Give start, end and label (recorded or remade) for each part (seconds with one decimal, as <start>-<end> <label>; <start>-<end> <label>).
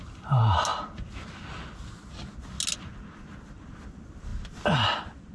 0.0-5.3 recorded